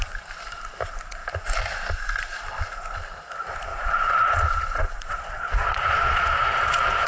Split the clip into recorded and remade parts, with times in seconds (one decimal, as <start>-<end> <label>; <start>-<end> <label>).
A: 0.0-3.7 recorded; 3.7-7.1 remade